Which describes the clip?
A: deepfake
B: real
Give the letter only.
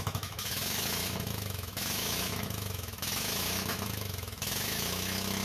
A